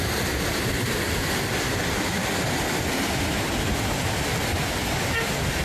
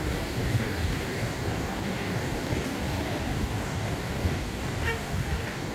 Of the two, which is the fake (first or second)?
second